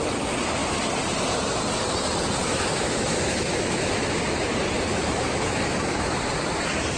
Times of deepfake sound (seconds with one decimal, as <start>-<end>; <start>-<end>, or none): 2.4-4.5; 4.9-6.2